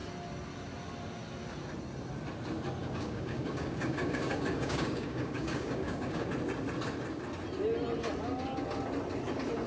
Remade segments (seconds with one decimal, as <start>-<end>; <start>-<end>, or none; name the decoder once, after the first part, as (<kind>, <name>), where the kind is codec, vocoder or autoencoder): 2.8-6.3 (codec, DAC)